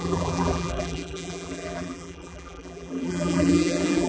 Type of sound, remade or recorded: remade